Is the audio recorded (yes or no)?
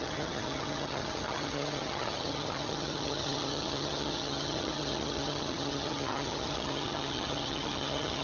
no